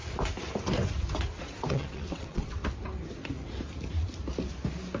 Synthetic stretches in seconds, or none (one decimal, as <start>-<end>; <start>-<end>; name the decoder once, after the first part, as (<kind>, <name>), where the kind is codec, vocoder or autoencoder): 1.7-2.6 (vocoder, WaveNeXt)